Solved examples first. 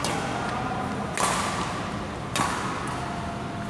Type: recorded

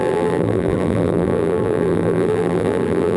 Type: remade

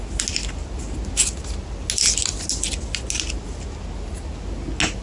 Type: recorded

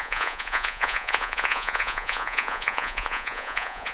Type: remade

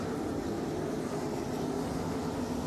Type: recorded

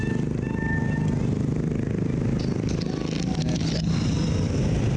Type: recorded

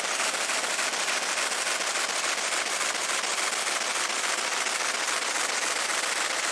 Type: recorded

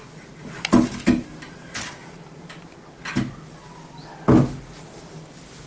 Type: recorded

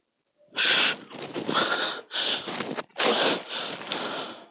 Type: recorded